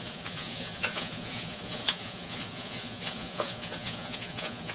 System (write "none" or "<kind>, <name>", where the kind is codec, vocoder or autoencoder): vocoder, Vocos